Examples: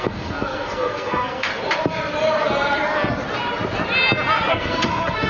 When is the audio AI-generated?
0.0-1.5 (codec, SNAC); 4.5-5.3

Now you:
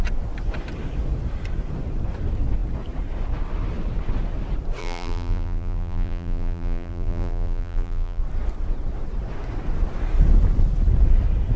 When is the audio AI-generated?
4.8-8.2 (vocoder, BigVGAN v2)

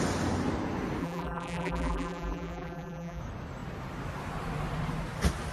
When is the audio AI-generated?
1.0-3.2 (vocoder, BigVGAN v2)

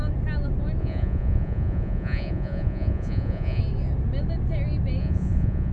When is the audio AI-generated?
0.8-3.6 (vocoder, Vocos); 5.0-5.7

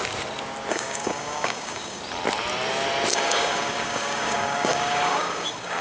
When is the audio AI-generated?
0.7-2.0 (codec, DAC); 3.1-5.8

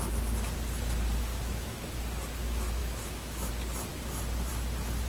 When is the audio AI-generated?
1.3-2.0 (autoencoder, DAC-VAE); 2.8-3.5

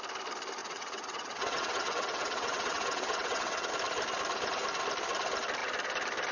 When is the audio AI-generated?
0.6-3.7 (vocoder, WaveNeXt)